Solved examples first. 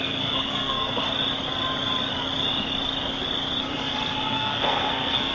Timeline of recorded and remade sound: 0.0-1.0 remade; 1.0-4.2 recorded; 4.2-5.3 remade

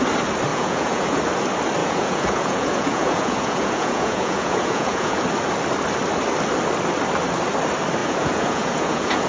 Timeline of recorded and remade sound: 0.0-0.5 recorded; 0.5-1.2 remade; 1.2-1.8 recorded; 1.8-5.2 remade; 5.2-8.0 recorded; 8.0-9.3 remade

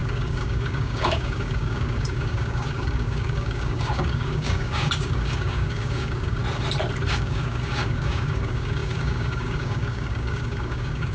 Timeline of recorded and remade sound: 0.0-6.4 remade; 6.4-7.1 recorded; 7.1-11.1 remade

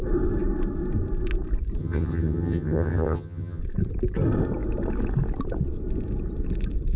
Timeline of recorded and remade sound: 0.0-1.8 recorded; 1.8-3.6 remade; 3.6-7.0 recorded

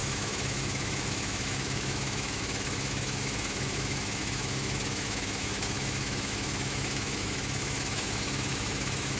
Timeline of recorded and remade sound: 0.0-9.2 remade

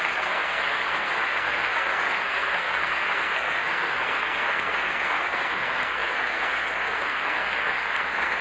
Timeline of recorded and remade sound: 0.0-8.4 remade